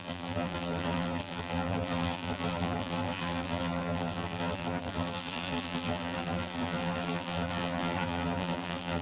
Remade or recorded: remade